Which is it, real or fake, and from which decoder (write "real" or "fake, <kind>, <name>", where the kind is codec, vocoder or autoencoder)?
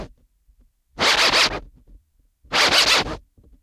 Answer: real